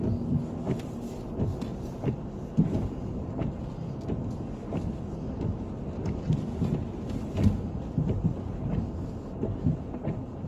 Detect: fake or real real